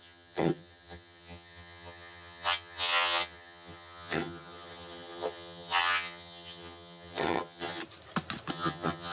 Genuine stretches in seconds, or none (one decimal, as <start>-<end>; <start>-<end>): 7.8-8.5